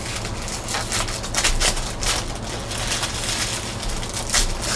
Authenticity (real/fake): real